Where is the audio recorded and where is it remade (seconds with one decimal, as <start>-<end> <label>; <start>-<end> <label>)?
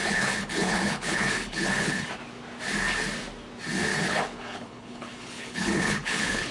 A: 0.0-2.0 remade; 2.0-3.9 recorded; 3.9-6.5 remade